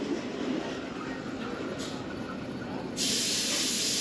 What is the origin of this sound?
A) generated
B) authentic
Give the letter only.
B